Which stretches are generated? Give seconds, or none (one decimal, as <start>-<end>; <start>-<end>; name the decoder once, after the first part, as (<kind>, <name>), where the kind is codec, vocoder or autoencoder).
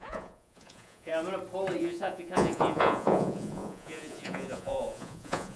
0.0-1.1 (vocoder, Vocos); 1.8-5.6